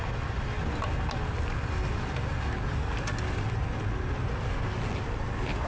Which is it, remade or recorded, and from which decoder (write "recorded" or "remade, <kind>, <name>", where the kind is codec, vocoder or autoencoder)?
recorded